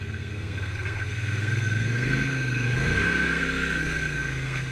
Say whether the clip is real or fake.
fake